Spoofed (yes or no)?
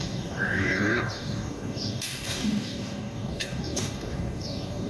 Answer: yes